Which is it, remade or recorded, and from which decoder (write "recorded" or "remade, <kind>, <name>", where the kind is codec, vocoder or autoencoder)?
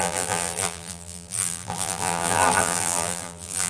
remade, vocoder, BigVGAN v2